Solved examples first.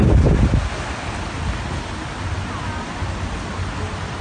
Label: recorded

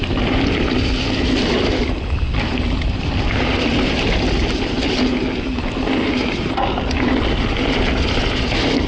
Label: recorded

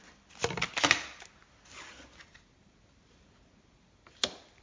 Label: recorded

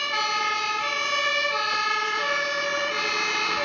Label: recorded